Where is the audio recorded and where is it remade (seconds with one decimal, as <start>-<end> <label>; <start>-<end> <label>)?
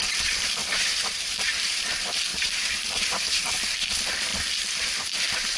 0.0-0.6 recorded; 0.6-1.8 remade; 1.8-2.3 recorded; 2.3-3.6 remade; 3.6-5.6 recorded